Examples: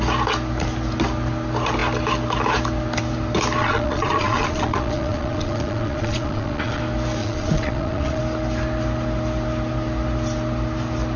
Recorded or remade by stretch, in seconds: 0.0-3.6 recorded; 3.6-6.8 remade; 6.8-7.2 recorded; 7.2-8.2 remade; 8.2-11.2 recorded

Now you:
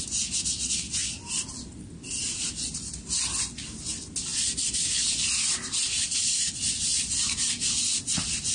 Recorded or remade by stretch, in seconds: 0.0-8.5 recorded

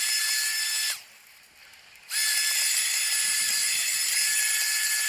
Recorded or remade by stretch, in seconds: 0.0-5.1 recorded

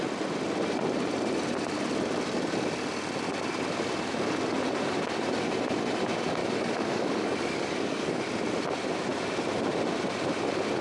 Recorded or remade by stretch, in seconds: 0.0-6.4 recorded; 6.4-8.2 remade; 8.2-10.8 recorded

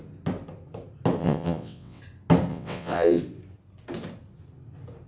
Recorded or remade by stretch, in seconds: 0.0-1.2 recorded; 1.2-2.0 remade; 2.0-2.5 recorded; 2.5-3.2 remade; 3.2-5.1 recorded